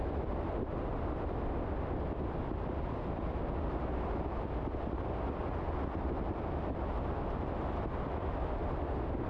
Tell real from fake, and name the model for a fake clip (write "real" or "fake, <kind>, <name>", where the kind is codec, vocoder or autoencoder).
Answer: real